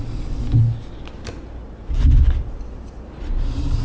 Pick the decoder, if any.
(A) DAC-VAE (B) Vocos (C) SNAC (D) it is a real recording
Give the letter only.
D